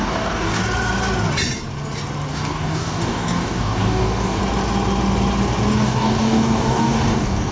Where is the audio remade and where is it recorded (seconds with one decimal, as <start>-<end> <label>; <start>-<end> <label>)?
0.0-0.6 remade; 0.6-2.3 recorded; 2.3-4.4 remade; 4.4-5.7 recorded; 5.7-7.5 remade